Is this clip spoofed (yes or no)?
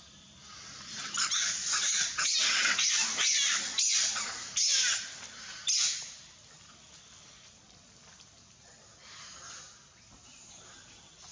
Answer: no